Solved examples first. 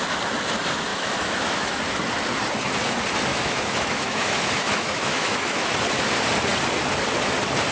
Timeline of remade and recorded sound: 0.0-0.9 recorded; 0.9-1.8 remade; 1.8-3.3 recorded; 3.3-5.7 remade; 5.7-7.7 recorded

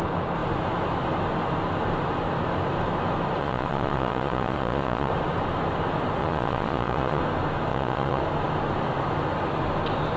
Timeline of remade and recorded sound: 0.0-3.4 recorded; 3.4-5.1 remade; 5.1-6.2 recorded; 6.2-7.2 remade; 7.2-7.7 recorded; 7.7-8.2 remade; 8.2-10.2 recorded

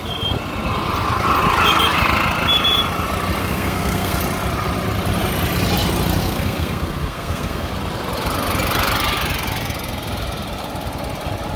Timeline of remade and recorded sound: 0.0-3.4 recorded; 3.4-4.2 remade; 4.2-6.2 recorded; 6.2-7.7 remade; 7.7-11.6 recorded

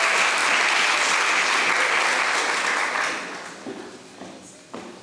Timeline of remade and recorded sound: 0.0-5.0 recorded

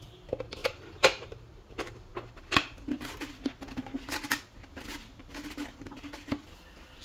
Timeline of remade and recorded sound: 0.0-0.6 recorded; 0.6-1.5 remade; 1.5-7.0 recorded

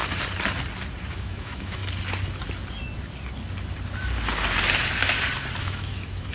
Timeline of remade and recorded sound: 0.0-1.1 recorded; 1.1-1.8 remade; 1.8-5.6 recorded; 5.6-6.3 remade